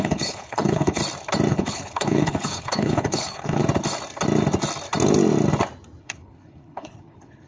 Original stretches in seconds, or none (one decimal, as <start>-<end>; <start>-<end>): 1.0-1.5; 3.6-6.0